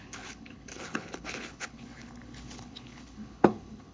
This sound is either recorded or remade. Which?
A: remade